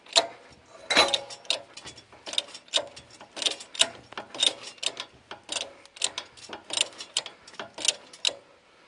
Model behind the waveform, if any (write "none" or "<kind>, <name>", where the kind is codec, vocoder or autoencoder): none